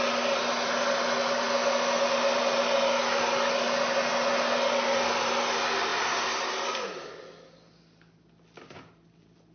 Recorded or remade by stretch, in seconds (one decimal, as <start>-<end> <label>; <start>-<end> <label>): 0.0-9.5 recorded